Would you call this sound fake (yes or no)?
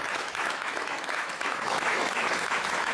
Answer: yes